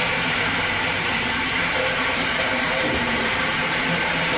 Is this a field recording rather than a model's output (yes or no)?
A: no